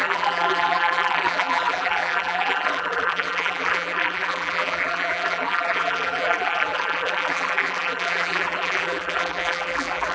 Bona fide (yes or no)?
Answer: no